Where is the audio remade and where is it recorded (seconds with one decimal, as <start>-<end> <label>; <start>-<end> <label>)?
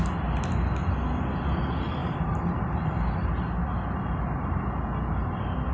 0.0-2.0 recorded; 2.0-3.0 remade; 3.0-5.7 recorded